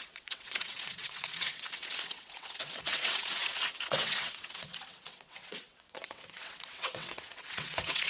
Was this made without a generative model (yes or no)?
no